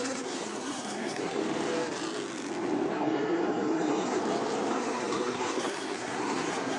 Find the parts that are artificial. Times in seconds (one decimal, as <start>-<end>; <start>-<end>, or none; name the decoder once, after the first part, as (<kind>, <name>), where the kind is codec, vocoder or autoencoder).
0.0-1.4 (codec, SNAC); 2.9-4.2; 4.7-6.8